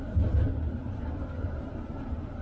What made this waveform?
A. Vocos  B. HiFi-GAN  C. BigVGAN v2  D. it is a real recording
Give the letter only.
C